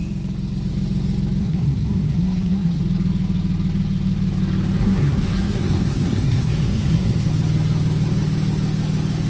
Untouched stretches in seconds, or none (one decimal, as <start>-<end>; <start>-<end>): 0.0-1.4; 2.8-4.8; 7.3-9.3